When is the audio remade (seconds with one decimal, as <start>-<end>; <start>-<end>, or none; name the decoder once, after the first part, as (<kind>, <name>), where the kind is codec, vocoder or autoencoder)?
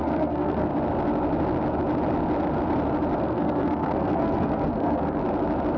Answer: 0.0-0.7 (codec, SNAC); 3.2-5.2